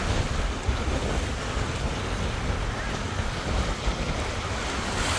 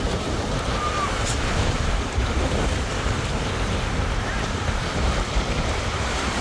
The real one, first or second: first